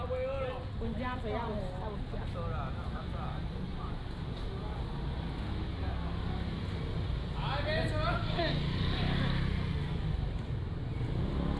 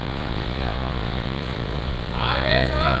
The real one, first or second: first